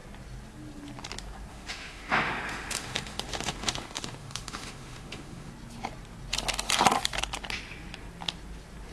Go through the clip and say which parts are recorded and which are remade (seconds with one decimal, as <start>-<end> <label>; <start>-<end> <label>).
0.0-1.5 recorded; 1.5-5.5 remade; 5.5-8.9 recorded